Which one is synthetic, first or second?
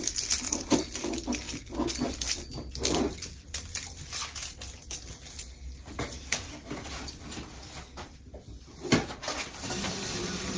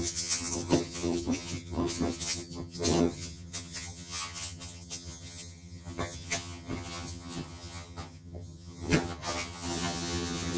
second